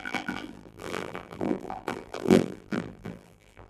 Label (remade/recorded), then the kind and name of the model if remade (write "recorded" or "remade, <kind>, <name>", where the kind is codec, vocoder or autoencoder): remade, vocoder, BigVGAN v2